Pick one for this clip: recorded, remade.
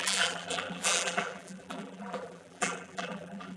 remade